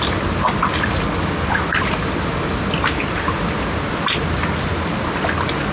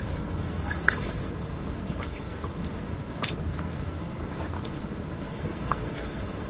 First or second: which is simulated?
second